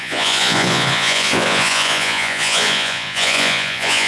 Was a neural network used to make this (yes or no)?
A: yes